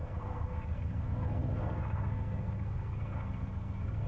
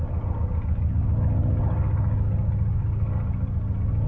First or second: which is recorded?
second